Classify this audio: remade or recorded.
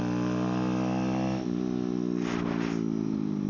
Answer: recorded